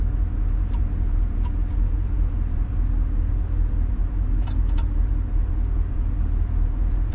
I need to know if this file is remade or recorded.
remade